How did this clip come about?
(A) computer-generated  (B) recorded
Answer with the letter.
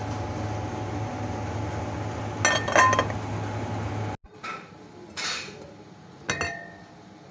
B